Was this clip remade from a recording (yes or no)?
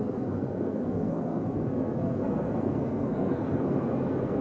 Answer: yes